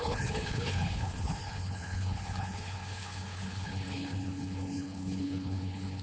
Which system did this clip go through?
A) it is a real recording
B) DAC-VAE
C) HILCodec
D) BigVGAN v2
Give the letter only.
C